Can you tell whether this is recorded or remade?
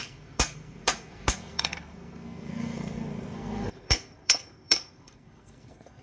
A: remade